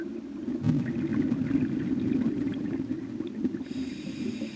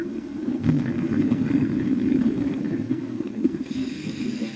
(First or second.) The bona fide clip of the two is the first